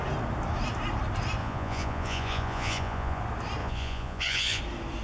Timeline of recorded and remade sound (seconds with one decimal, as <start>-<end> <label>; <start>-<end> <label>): 0.0-1.4 recorded; 1.4-3.2 remade; 3.2-3.6 recorded; 3.6-4.6 remade; 4.6-5.0 recorded